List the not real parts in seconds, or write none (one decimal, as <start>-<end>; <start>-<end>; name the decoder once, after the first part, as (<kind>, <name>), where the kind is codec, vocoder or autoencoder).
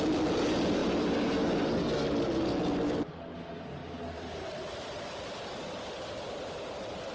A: none